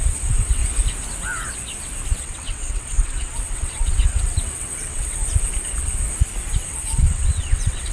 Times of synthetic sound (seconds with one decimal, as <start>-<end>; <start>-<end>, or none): 0.0-0.6; 2.2-5.2; 6.7-7.9